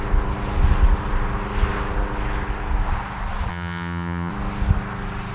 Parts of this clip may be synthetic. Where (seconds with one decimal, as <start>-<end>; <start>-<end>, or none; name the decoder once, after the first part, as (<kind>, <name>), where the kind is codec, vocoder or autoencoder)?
3.5-4.3 (vocoder, HiFi-GAN)